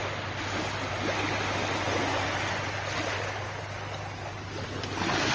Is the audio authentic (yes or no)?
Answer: yes